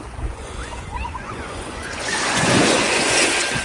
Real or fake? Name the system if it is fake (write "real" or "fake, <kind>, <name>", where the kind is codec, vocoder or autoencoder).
fake, vocoder, Vocos